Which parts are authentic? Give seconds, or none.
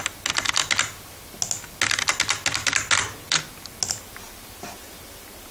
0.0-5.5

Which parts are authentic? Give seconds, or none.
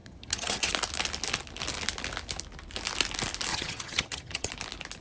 0.7-3.5; 4.5-5.0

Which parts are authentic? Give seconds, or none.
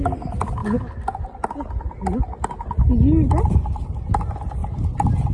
0.0-5.3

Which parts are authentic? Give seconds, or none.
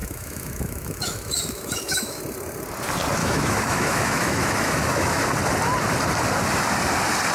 2.2-3.2; 5.2-7.3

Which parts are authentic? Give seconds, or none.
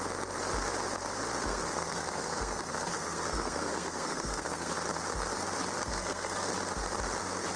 0.0-1.5; 4.7-5.8; 6.5-7.6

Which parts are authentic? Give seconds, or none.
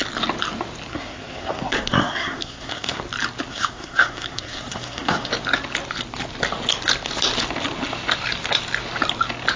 0.0-0.9; 3.0-3.5; 5.3-9.6